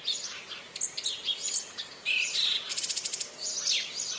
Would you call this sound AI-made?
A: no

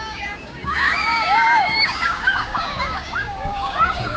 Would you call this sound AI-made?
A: yes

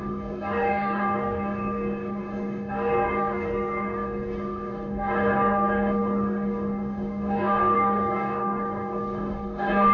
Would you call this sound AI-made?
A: yes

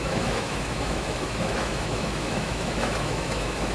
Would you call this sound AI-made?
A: yes